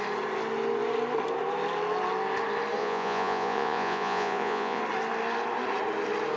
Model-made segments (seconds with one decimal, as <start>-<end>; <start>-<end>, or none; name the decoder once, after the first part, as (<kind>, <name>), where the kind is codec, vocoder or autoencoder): 2.8-4.8 (vocoder, Vocos)